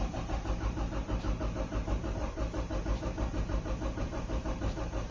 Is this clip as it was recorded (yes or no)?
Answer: no